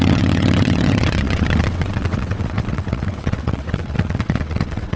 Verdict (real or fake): fake